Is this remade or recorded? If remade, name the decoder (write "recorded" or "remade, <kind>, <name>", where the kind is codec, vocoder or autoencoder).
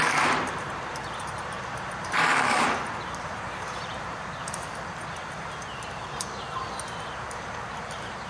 remade, vocoder, BigVGAN v2